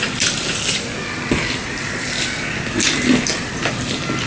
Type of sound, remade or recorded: recorded